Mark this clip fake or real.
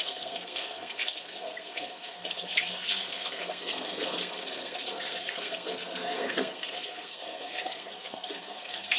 fake